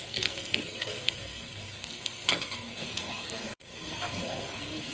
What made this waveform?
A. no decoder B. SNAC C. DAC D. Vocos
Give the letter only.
B